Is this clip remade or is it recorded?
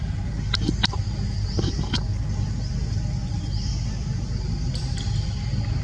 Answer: recorded